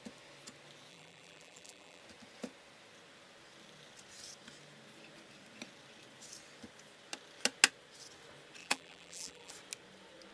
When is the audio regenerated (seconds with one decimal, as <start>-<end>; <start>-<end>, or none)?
0.9-2.0; 8.6-9.5